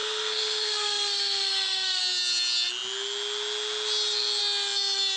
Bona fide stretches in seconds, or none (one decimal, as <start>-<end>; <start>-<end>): 2.0-5.2